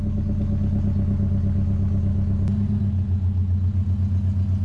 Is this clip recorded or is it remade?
recorded